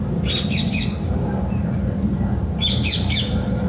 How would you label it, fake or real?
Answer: fake